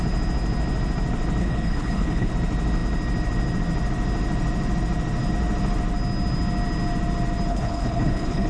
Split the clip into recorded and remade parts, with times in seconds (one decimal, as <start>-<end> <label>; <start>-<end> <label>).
0.0-1.4 recorded; 1.4-2.3 remade; 2.3-7.5 recorded; 7.5-8.5 remade